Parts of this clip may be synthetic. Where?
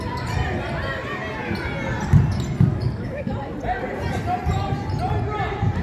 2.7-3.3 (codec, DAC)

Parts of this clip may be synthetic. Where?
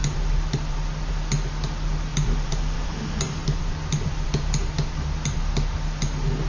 0.0-1.1 (vocoder, BigVGAN v2); 2.1-3.0; 3.4-5.4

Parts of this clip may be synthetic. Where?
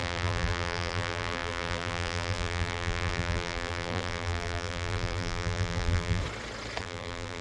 0.0-6.2 (vocoder, BigVGAN v2); 6.8-7.4